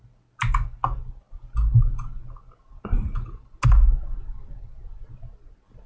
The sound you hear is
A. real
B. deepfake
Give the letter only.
A